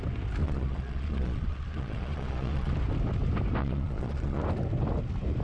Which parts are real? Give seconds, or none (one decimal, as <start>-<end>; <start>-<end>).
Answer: 0.0-0.4; 2.7-3.6; 4.4-5.4